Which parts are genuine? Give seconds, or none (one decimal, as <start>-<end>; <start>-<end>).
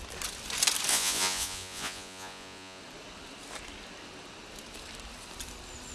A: 0.0-0.9; 2.8-5.9